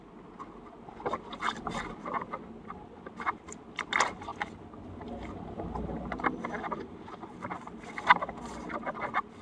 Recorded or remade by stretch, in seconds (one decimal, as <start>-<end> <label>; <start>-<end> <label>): 0.0-9.4 recorded